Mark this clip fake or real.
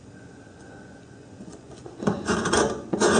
fake